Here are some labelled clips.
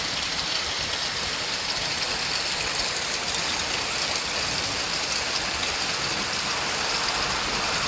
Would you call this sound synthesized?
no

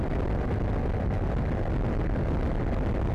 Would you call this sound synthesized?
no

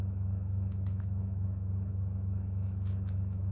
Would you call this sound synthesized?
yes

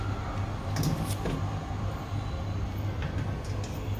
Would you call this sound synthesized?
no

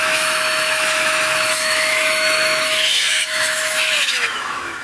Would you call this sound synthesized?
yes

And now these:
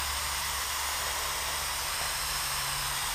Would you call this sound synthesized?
no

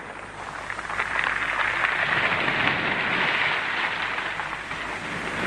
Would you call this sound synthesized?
no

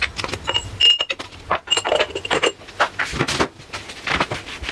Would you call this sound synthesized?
no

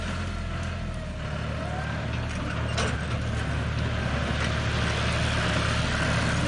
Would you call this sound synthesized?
no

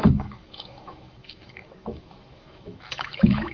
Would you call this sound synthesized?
yes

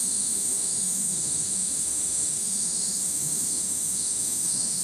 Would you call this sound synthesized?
yes